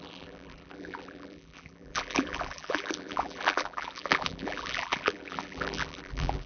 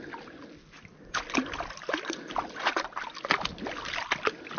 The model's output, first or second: first